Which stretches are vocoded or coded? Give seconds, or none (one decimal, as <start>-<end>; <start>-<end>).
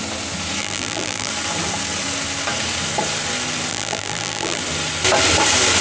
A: 0.6-1.3; 3.7-4.6